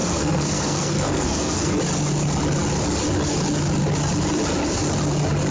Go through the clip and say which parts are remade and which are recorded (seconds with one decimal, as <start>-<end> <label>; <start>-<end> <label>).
0.0-1.7 remade; 1.7-5.5 recorded